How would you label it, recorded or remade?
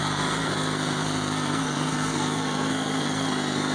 remade